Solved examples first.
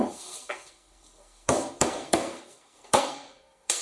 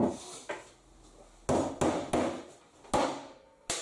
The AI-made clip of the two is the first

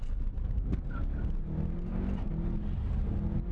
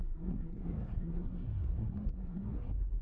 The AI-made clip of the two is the second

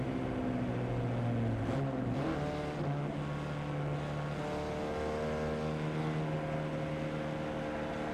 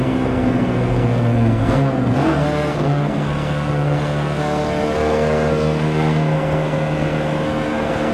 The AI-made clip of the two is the second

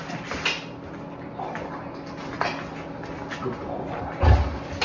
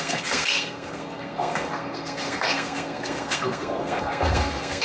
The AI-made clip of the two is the second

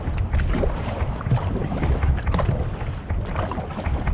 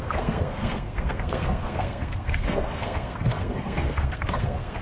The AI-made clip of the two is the second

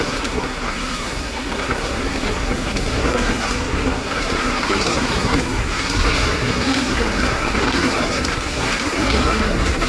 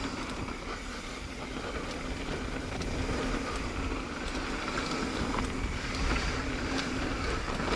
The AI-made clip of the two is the first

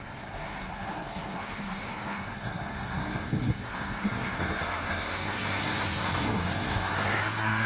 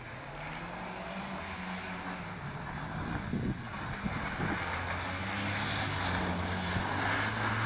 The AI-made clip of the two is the first